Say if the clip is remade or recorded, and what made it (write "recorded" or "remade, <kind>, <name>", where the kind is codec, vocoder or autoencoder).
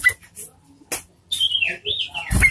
recorded